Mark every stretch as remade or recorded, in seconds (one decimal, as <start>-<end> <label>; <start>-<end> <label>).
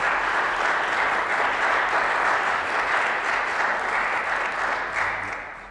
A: 0.0-5.7 recorded